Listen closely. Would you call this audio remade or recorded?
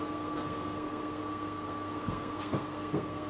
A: remade